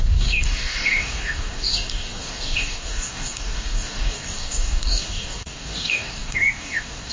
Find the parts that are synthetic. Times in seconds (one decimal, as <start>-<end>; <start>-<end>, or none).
0.0-7.1